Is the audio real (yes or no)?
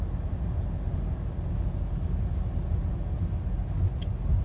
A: yes